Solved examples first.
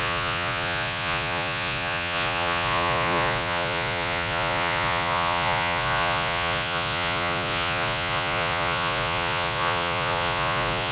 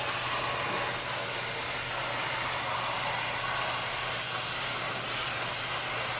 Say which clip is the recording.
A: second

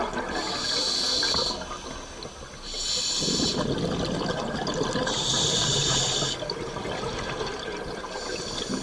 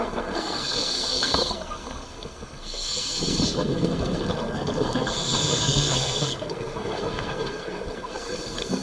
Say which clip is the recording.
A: first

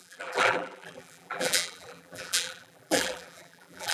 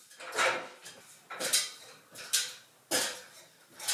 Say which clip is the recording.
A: second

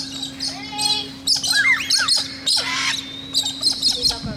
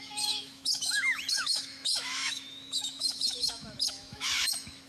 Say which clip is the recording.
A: first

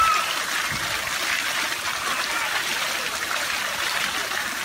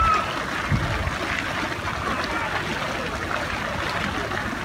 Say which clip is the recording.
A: second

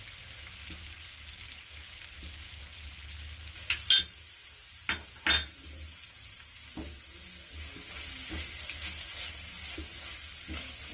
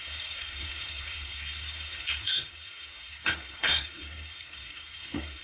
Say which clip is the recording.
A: first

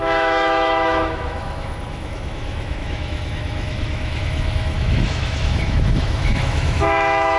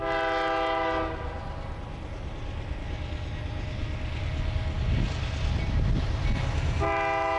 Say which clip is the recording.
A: second